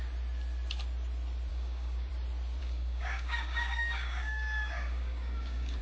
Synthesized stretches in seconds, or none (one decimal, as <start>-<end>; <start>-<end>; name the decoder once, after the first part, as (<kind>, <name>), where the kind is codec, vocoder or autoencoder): 1.5-2.1 (codec, DAC); 2.6-5.8